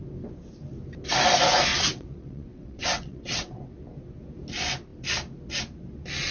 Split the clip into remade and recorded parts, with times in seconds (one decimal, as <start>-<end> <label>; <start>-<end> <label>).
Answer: 0.0-1.7 recorded; 1.7-3.7 remade; 3.7-6.3 recorded